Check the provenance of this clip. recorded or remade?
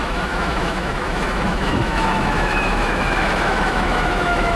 remade